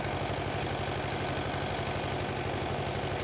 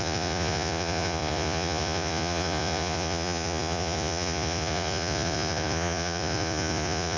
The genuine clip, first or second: first